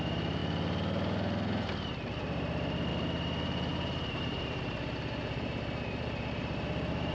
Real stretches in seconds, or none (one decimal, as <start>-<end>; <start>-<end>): 0.4-2.9